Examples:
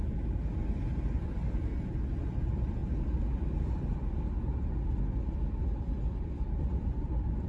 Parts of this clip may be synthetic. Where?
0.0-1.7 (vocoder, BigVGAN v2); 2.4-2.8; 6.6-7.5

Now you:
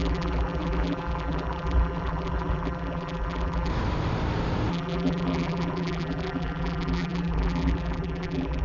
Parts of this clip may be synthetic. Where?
0.0-3.7 (vocoder, BigVGAN v2); 4.7-8.6

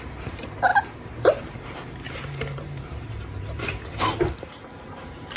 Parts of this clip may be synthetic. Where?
0.0-5.4 (vocoder, BigVGAN v2)